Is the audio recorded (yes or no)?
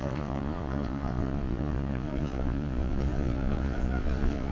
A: no